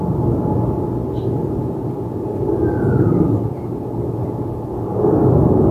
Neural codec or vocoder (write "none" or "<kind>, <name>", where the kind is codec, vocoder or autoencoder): none